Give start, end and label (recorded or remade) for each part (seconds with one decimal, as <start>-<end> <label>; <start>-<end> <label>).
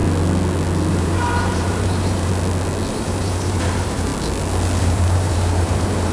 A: 0.0-0.9 recorded; 0.9-2.3 remade; 2.3-2.9 recorded; 2.9-4.1 remade; 4.1-4.8 recorded; 4.8-6.1 remade